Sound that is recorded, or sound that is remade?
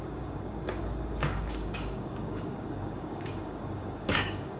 remade